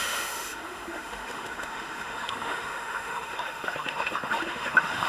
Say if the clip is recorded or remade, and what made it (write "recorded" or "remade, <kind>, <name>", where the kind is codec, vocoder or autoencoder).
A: remade, autoencoder, DAC-VAE